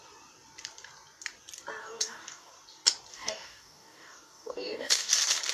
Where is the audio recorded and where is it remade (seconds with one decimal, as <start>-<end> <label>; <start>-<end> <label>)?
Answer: 0.0-1.8 recorded; 1.8-2.5 remade; 2.5-3.1 recorded; 3.1-5.1 remade; 5.1-5.5 recorded